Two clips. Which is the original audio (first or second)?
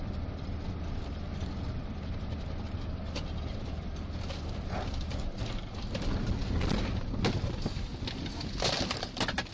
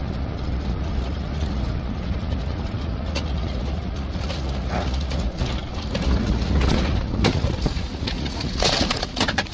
first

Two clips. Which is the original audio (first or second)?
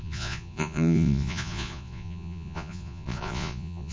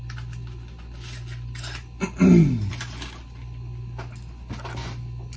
second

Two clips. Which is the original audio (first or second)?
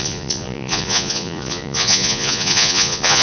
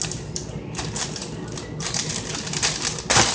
second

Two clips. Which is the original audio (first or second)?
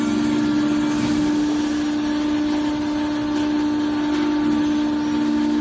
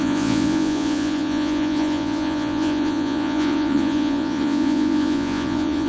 first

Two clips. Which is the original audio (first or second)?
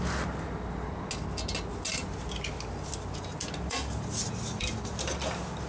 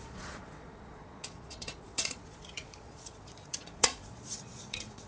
first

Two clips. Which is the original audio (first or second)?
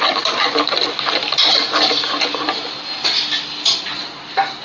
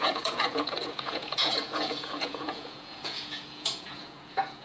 first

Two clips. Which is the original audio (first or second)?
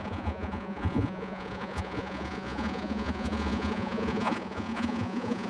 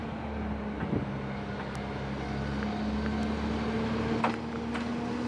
second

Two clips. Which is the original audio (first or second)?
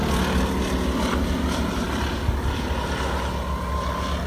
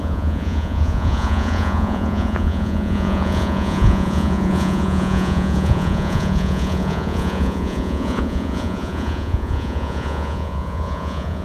first